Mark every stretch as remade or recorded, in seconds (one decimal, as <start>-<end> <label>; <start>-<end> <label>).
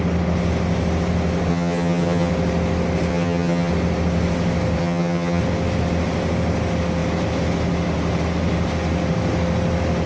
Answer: 0.0-1.5 recorded; 1.5-2.3 remade; 2.3-3.1 recorded; 3.1-3.7 remade; 3.7-4.8 recorded; 4.8-5.4 remade; 5.4-10.1 recorded